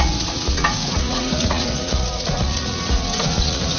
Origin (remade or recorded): remade